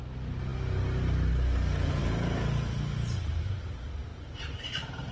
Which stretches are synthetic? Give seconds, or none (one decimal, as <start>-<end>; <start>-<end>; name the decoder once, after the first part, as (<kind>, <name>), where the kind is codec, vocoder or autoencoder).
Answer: 2.0-3.4 (vocoder, BigVGAN v2); 4.1-5.1